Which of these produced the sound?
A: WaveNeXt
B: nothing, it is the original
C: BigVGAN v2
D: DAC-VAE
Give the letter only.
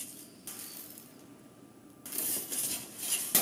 B